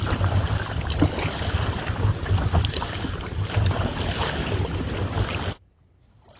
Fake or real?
real